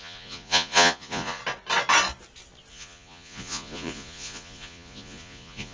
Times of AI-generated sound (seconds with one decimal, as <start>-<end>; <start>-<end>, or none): 0.0-1.4; 2.7-5.7